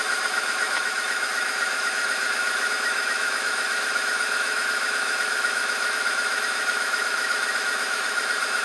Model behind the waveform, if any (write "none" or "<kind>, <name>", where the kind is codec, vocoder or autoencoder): autoencoder, DAC-VAE